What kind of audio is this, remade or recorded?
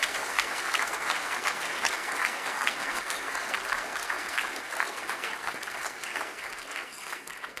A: remade